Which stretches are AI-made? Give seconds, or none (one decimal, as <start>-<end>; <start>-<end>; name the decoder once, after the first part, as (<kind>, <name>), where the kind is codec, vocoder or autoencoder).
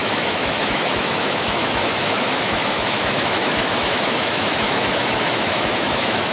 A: 0.0-6.3 (autoencoder, DAC-VAE)